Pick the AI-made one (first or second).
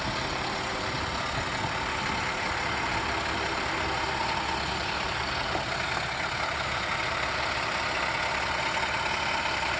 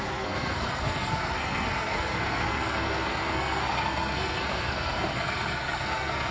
second